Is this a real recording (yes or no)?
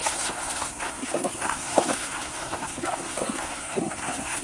no